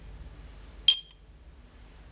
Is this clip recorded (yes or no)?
yes